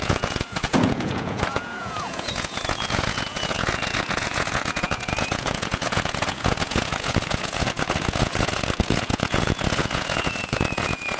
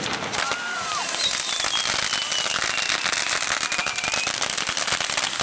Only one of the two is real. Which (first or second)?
second